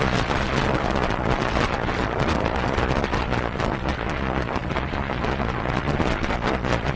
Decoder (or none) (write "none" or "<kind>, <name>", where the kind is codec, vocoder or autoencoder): vocoder, Vocos